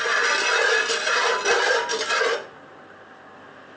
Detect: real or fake real